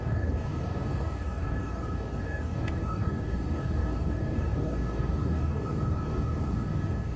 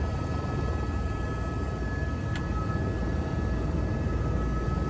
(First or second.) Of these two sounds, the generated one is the first